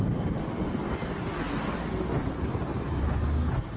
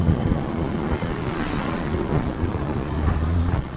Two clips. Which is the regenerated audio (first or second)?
second